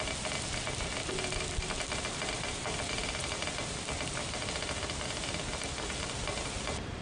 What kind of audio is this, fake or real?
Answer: real